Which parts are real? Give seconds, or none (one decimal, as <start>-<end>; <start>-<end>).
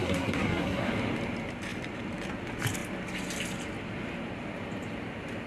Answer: 0.9-5.5